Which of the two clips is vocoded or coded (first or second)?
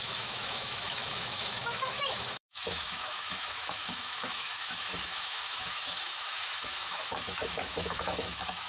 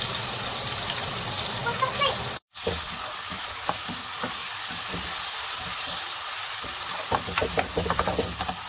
first